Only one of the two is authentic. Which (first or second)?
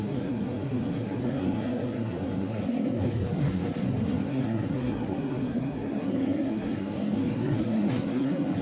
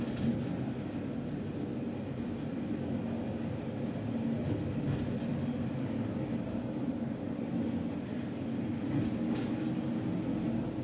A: second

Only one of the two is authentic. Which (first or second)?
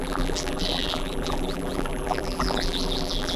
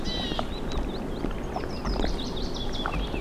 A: second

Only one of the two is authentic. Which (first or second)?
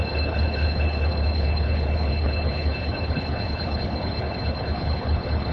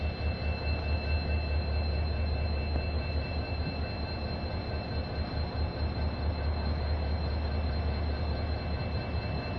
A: second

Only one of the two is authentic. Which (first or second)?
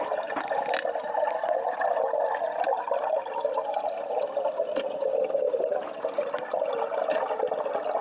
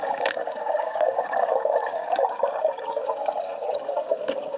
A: first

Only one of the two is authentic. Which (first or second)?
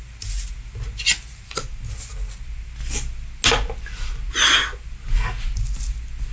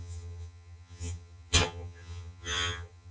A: first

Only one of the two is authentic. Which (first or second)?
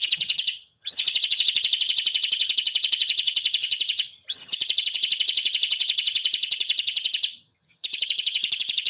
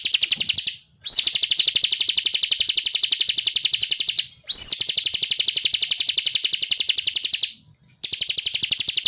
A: second